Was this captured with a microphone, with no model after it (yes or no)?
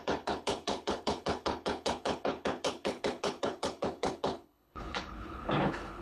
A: no